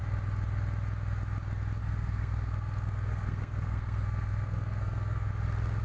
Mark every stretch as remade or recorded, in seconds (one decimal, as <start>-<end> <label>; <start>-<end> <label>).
0.0-1.8 recorded; 1.8-5.3 remade; 5.3-5.8 recorded